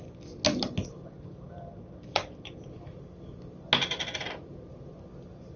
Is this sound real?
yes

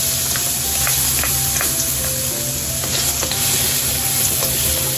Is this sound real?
yes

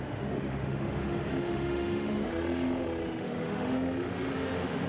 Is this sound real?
no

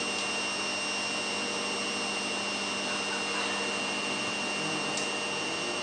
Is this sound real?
yes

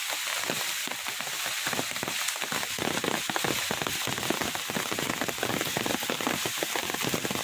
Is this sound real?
yes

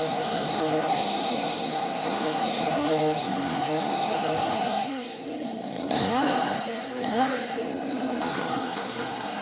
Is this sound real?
no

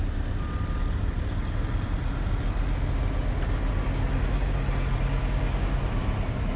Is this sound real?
yes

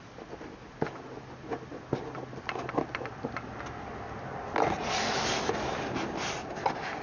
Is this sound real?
yes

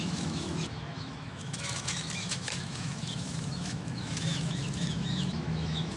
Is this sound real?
no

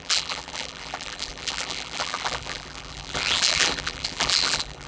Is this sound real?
no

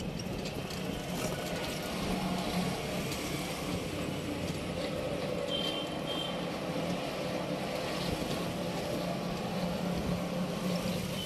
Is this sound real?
yes